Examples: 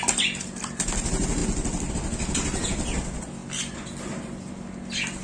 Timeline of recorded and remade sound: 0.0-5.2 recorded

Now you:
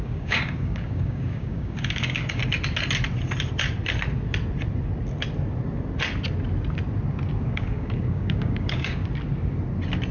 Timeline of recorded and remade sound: 0.0-2.4 remade; 2.4-7.4 recorded; 7.4-9.0 remade; 9.0-10.1 recorded

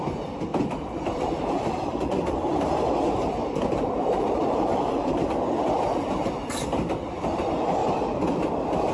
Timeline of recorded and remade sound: 0.0-0.5 recorded; 0.5-5.2 remade; 5.2-7.8 recorded; 7.8-8.5 remade; 8.5-8.9 recorded

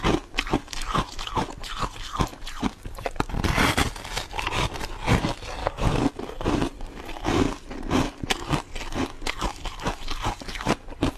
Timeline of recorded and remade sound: 0.0-5.6 recorded; 5.6-6.1 remade; 6.1-11.2 recorded

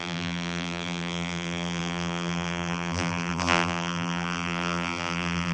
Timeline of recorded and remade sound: 0.0-5.5 remade

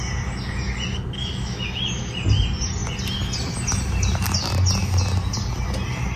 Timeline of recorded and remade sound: 0.0-1.2 recorded; 1.2-2.1 remade; 2.1-6.2 recorded